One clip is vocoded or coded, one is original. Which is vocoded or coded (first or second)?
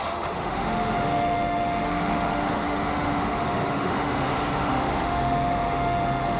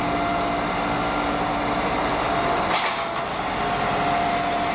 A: first